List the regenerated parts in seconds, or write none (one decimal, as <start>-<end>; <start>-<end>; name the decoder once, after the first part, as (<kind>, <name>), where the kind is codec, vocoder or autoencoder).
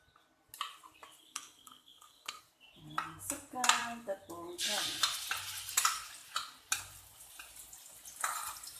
1.2-2.4 (codec, SNAC)